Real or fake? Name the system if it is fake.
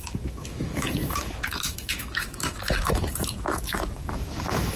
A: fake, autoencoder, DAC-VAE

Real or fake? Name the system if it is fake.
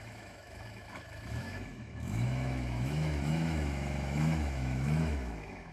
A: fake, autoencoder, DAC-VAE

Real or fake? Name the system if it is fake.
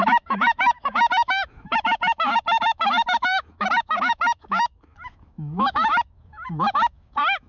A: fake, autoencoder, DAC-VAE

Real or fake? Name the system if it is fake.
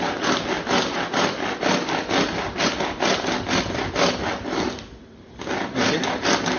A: real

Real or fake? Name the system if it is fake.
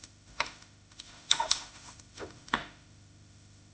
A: fake, autoencoder, DAC-VAE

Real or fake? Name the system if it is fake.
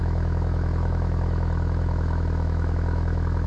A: fake, autoencoder, DAC-VAE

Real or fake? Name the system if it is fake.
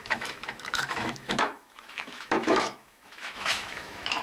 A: fake, autoencoder, DAC-VAE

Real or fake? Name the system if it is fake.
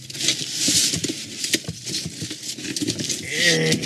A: real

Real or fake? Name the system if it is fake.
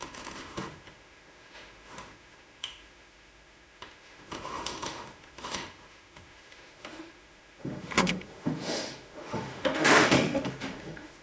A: fake, autoencoder, DAC-VAE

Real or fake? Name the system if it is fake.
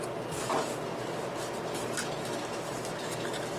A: real